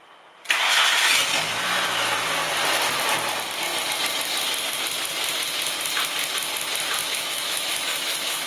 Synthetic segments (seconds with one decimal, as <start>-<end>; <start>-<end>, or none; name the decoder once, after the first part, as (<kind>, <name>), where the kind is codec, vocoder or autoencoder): 7.0-8.5 (autoencoder, DAC-VAE)